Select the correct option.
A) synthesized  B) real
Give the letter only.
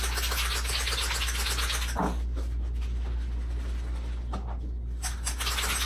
B